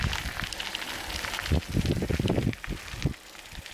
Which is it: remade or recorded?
recorded